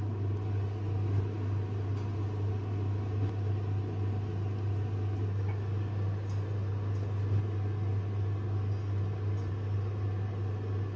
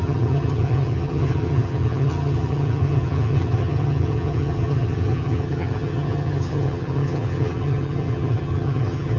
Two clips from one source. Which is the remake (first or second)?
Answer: second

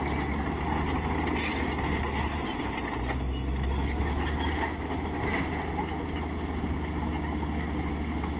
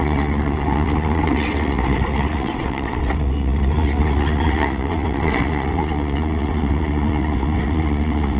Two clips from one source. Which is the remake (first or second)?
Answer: second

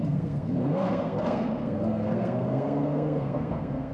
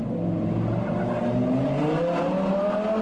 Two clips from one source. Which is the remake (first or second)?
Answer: first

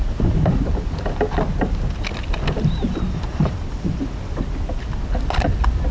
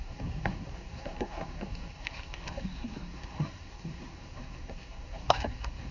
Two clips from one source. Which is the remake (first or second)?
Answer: second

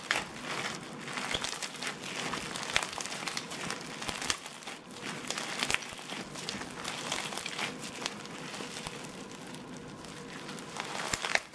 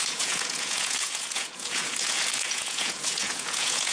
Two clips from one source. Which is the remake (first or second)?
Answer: second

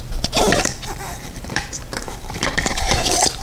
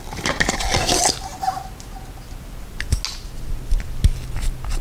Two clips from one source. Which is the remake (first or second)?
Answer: first